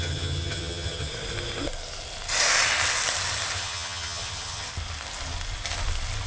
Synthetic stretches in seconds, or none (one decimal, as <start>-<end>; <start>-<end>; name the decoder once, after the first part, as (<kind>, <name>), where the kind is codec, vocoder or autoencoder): 0.0-1.1 (vocoder, HiFi-GAN); 3.6-4.7

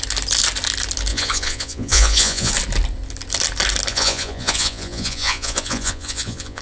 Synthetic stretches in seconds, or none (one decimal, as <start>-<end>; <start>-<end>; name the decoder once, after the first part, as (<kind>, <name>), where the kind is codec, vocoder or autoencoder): 1.1-2.5 (vocoder, Vocos); 3.9-6.6

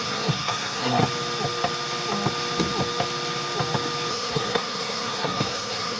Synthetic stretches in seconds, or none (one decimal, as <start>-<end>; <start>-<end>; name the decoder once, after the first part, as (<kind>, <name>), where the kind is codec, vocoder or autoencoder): 0.0-1.0 (codec, SNAC); 4.1-6.0

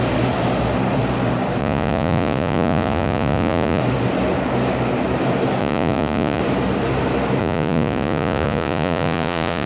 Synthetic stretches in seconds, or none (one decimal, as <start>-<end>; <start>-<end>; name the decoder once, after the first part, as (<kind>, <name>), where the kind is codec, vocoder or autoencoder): 1.6-3.8 (vocoder, Vocos); 5.6-6.4; 7.4-9.7

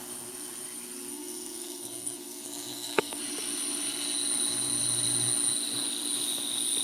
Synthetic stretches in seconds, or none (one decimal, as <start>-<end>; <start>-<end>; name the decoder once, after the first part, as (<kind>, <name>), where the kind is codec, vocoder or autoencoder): 1.1-3.2 (codec, SNAC)

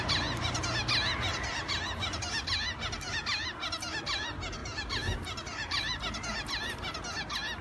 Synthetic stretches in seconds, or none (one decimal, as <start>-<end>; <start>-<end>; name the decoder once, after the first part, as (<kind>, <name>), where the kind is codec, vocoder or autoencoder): 4.6-6.0 (vocoder, BigVGAN v2)

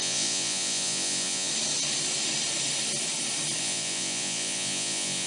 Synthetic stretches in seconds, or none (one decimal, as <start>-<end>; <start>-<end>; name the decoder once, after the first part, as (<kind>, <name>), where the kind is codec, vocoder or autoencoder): 0.0-1.5 (vocoder, Vocos); 3.6-5.3

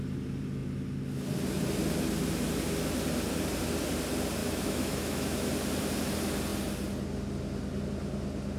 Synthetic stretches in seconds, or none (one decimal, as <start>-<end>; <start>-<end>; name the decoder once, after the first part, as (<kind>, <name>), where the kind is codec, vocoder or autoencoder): 4.4-5.5 (autoencoder, DAC-VAE)